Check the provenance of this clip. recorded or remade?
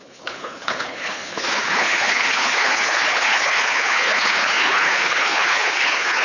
remade